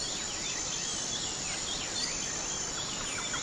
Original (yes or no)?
yes